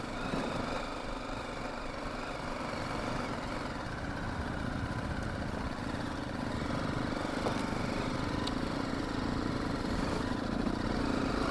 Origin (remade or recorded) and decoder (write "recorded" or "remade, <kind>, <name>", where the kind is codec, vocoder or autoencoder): remade, vocoder, BigVGAN v2